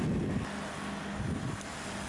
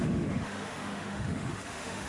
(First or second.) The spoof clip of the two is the second